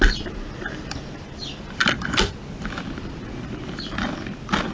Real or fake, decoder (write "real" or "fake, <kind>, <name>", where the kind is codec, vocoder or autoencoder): real